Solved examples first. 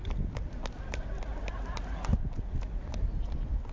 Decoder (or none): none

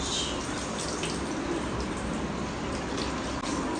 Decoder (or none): none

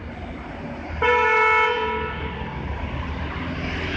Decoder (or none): none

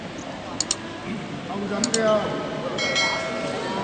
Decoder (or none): none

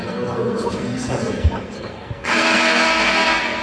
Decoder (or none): codec, SNAC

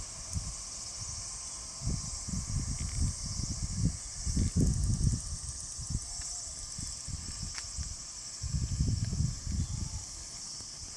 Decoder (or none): none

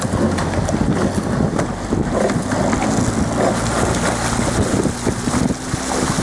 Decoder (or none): none